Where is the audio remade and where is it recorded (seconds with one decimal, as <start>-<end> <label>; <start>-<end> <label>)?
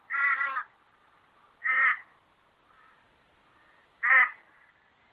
0.0-1.0 remade; 1.0-4.1 recorded; 4.1-5.1 remade